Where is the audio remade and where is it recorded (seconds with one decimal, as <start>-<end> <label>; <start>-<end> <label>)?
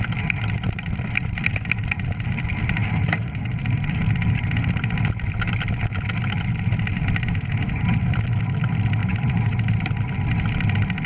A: 0.0-2.8 recorded; 2.8-3.4 remade; 3.4-9.0 recorded; 9.0-9.9 remade; 9.9-11.1 recorded